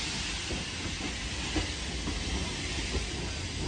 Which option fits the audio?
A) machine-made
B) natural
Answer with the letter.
B